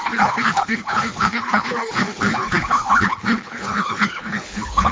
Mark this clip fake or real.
fake